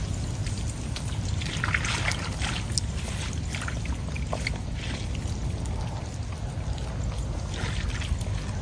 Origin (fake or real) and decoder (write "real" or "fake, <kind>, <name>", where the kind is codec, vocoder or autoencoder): real